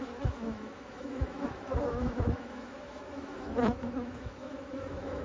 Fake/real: fake